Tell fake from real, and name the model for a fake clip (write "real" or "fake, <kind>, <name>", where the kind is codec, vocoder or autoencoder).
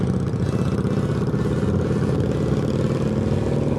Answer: real